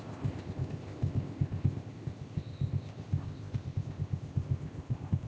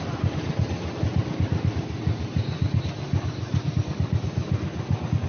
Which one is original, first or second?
second